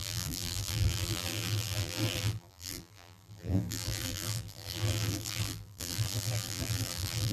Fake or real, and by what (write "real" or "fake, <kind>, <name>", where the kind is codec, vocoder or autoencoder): fake, vocoder, BigVGAN v2